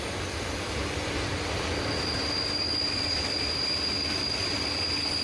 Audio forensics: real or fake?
real